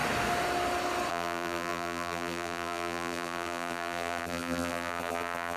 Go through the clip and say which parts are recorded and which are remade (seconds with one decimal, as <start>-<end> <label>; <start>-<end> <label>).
0.0-1.1 recorded; 1.1-5.6 remade